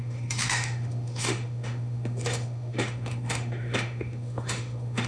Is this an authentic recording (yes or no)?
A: no